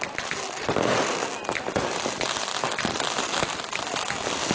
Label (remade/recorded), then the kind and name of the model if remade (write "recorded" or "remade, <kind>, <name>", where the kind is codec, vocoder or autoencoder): recorded